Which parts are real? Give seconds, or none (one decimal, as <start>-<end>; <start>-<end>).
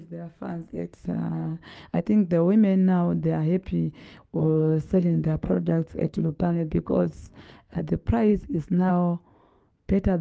0.0-0.7; 2.0-4.4; 7.8-8.3; 8.9-10.2